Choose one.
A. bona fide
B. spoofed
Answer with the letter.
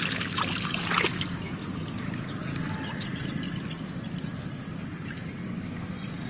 A